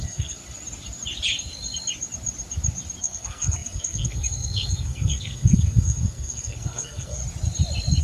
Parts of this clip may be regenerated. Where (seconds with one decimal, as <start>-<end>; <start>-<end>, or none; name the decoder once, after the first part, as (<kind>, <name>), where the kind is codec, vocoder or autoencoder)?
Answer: 0.0-0.4 (codec, SNAC); 3.0-7.2